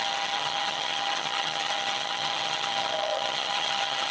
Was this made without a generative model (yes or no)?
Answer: no